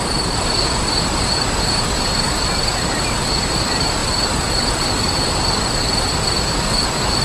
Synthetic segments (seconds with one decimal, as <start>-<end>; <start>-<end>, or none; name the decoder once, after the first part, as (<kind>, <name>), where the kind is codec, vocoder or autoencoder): none